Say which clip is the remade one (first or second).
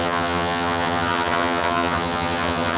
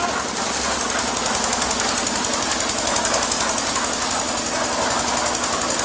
first